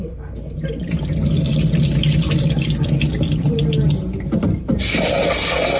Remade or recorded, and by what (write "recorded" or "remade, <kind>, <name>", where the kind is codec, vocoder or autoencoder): recorded